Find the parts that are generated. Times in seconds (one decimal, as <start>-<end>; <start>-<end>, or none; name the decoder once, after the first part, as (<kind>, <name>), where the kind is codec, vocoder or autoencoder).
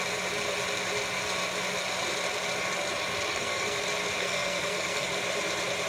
3.3-3.8 (codec, SNAC); 4.2-5.1